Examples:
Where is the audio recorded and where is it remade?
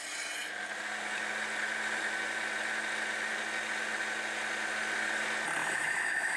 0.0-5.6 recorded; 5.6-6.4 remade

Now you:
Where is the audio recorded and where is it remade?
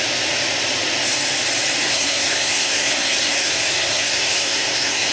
0.0-1.8 recorded; 1.8-5.1 remade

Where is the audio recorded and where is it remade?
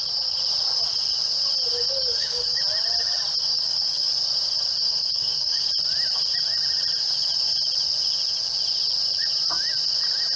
0.0-1.9 recorded; 1.9-2.6 remade; 2.6-3.4 recorded; 3.4-4.1 remade; 4.1-4.8 recorded; 4.8-5.7 remade; 5.7-10.4 recorded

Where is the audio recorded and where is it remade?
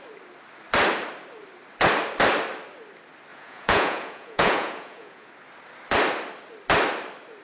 0.0-3.3 recorded; 3.3-5.3 remade; 5.3-7.4 recorded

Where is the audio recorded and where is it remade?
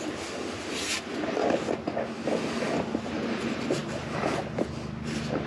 0.0-5.5 recorded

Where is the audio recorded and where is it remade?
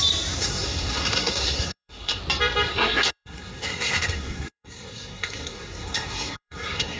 0.0-0.4 recorded; 0.4-2.2 remade; 2.2-2.7 recorded; 2.7-7.0 remade